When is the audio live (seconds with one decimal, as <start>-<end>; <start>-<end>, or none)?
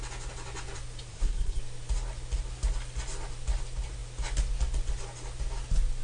0.0-1.1; 1.6-6.0